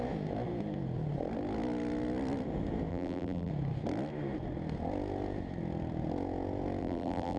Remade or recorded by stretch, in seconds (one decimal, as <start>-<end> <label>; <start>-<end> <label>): 0.0-2.9 recorded; 2.9-3.5 remade; 3.5-6.8 recorded; 6.8-7.4 remade